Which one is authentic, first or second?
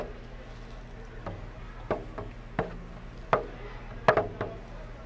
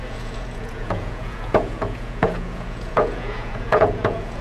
first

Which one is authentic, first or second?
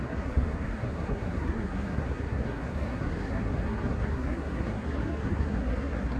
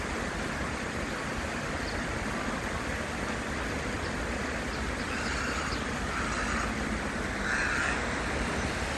second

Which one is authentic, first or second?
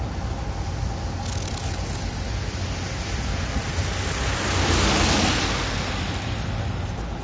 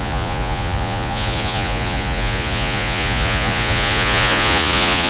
first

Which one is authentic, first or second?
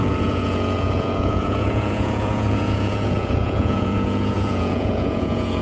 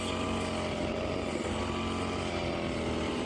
second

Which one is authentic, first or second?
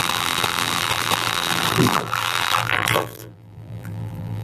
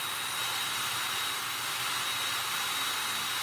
second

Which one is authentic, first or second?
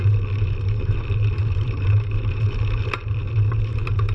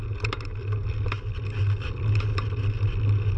second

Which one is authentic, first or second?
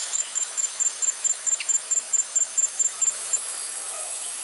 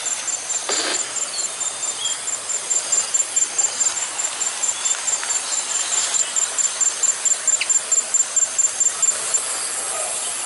second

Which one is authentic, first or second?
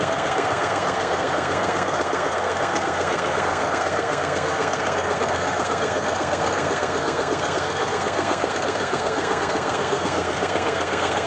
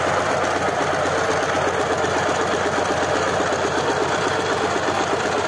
second